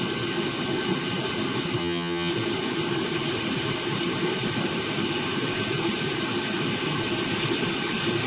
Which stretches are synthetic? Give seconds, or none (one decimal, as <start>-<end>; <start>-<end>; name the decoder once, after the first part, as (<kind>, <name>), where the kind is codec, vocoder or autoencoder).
1.8-2.3 (vocoder, HiFi-GAN)